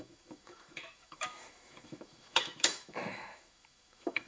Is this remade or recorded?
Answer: remade